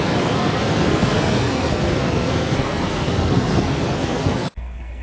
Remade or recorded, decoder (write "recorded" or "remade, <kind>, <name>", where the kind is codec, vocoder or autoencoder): remade, codec, SNAC